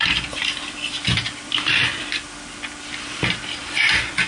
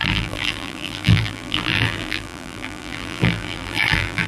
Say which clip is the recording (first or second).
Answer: first